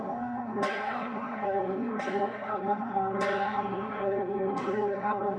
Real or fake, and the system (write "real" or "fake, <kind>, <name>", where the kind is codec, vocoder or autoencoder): fake, codec, SNAC